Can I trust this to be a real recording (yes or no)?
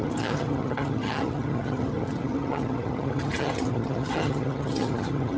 no